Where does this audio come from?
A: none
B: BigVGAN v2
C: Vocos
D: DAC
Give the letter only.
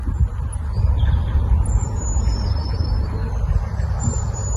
A